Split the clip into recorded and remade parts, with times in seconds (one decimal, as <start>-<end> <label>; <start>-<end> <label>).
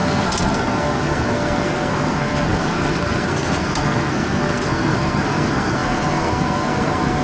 0.0-7.2 remade